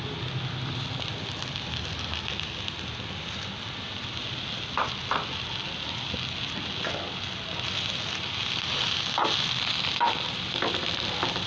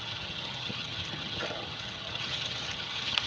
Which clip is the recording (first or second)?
first